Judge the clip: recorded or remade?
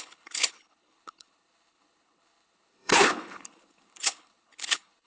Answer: remade